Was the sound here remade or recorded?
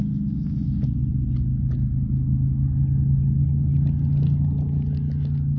recorded